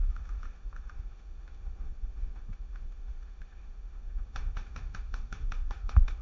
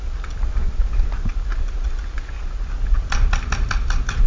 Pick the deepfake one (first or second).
first